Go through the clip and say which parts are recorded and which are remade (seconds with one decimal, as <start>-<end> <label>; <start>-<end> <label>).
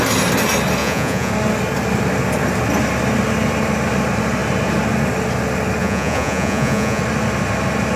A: 0.0-0.8 recorded; 0.8-1.3 remade; 1.3-5.8 recorded; 5.8-7.0 remade; 7.0-8.0 recorded